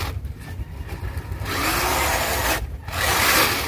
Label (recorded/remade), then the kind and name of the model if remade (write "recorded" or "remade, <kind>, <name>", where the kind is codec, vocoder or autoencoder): recorded